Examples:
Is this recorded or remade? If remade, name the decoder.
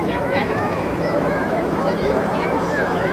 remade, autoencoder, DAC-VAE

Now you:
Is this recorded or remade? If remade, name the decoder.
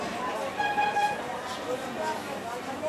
recorded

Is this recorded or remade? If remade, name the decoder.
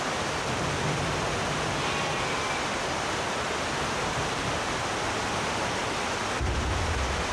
recorded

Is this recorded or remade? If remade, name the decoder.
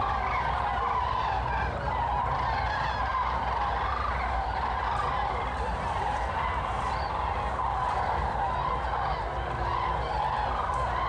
recorded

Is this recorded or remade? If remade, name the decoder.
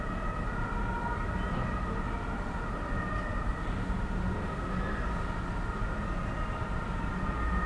recorded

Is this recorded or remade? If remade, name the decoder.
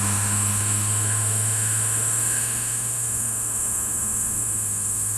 remade, autoencoder, DAC-VAE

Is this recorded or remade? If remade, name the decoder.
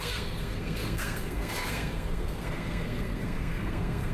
remade, codec, SNAC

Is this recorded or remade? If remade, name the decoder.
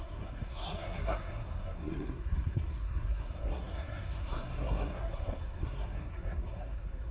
remade, codec, SNAC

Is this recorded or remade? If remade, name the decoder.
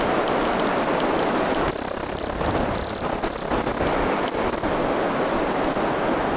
recorded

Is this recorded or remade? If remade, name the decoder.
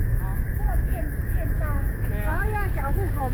remade, codec, DAC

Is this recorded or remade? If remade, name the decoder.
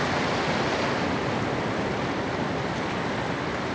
recorded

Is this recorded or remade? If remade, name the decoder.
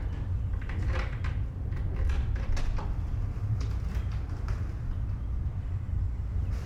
recorded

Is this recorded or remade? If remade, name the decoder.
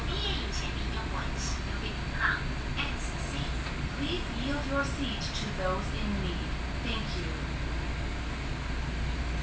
recorded